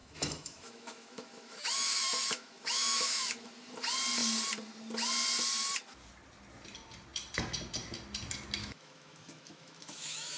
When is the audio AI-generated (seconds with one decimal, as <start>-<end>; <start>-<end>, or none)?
0.0-3.5; 8.6-10.4